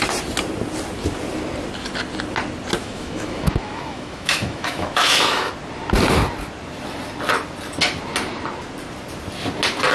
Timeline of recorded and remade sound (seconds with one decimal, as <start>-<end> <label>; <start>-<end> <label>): 0.0-2.8 recorded; 2.8-5.5 remade; 5.5-9.9 recorded